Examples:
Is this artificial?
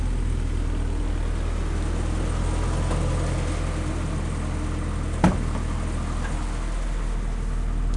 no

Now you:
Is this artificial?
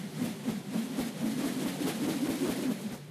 no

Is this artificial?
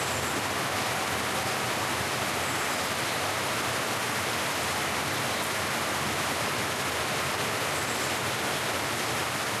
no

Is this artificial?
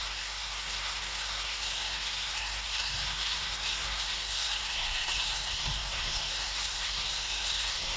yes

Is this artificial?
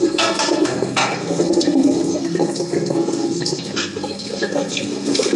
yes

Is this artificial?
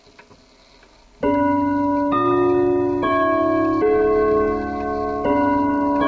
no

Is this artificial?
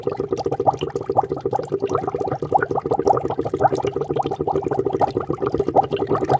no